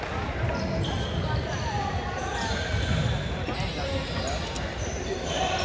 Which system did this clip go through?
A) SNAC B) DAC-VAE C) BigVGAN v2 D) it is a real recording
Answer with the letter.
D